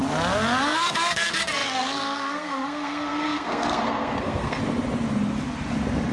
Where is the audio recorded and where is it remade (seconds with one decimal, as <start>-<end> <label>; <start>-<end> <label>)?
0.0-0.6 recorded; 0.6-4.6 remade; 4.6-6.1 recorded